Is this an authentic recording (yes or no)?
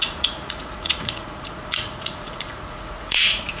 no